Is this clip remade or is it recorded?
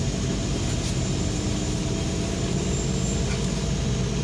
recorded